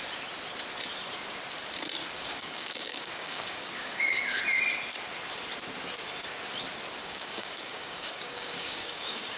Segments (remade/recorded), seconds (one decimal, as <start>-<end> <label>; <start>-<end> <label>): 0.0-2.0 recorded; 2.0-4.4 remade; 4.4-7.0 recorded; 7.0-9.4 remade